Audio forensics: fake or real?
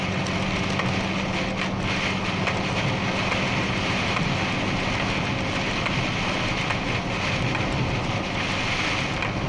real